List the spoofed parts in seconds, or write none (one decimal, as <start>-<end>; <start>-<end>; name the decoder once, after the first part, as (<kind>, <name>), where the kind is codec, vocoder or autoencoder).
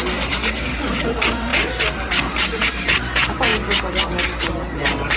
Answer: none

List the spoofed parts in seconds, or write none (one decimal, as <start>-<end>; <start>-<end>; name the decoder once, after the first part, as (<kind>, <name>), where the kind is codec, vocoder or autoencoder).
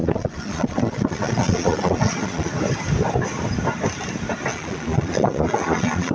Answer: 0.0-2.5 (vocoder, Vocos); 4.5-6.1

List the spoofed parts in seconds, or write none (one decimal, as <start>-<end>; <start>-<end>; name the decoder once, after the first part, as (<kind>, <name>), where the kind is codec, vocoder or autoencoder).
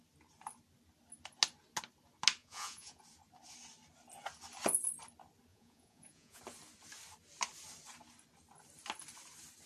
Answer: 2.4-3.0 (vocoder, Vocos); 5.5-6.4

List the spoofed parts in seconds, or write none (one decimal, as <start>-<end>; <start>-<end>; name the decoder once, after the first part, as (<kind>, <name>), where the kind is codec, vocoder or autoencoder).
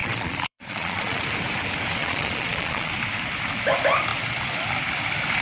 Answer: 0.0-1.2 (vocoder, Vocos); 2.0-2.9